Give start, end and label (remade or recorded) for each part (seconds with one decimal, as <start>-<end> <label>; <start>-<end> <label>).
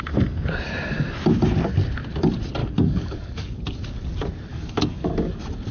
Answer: 0.0-2.6 recorded; 2.6-3.6 remade; 3.6-4.5 recorded; 4.5-5.1 remade; 5.1-5.7 recorded